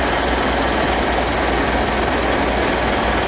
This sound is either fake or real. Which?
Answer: real